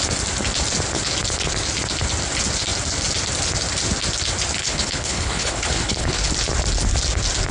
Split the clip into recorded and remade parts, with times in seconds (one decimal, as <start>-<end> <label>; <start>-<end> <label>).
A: 0.0-4.6 recorded; 4.6-6.3 remade; 6.3-7.5 recorded